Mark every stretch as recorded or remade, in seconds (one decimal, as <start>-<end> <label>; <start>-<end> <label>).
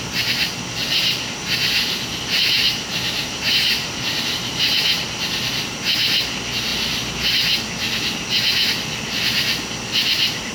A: 0.0-0.8 recorded; 0.8-5.1 remade; 5.1-10.5 recorded